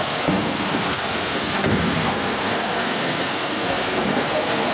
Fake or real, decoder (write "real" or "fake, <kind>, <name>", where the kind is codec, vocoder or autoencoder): fake, codec, SNAC